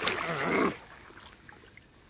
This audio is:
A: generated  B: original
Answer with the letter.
B